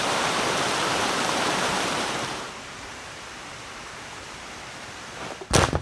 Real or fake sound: fake